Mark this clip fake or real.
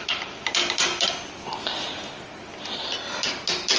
real